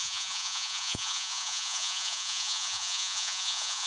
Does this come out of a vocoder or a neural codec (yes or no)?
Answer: yes